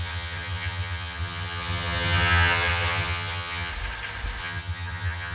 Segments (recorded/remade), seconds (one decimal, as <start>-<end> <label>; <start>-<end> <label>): 0.0-3.7 remade; 3.7-4.4 recorded; 4.4-5.3 remade